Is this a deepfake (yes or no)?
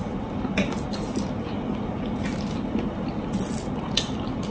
no